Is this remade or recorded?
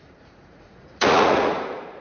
remade